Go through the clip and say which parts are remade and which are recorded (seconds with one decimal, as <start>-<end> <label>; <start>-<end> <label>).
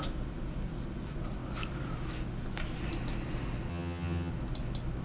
0.0-3.7 recorded; 3.7-4.3 remade; 4.3-5.0 recorded